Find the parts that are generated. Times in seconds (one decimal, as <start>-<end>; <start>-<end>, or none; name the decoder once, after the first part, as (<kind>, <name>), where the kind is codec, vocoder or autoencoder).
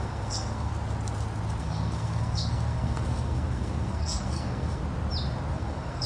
0.0-0.7 (codec, SNAC); 1.6-4.8; 5.5-6.1